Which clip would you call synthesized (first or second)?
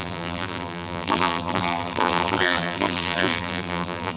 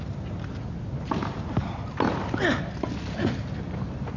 first